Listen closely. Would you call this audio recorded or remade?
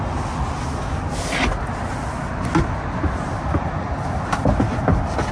recorded